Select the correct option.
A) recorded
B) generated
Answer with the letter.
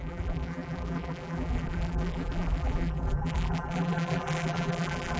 B